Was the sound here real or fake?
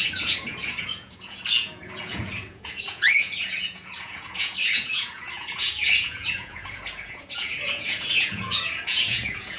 fake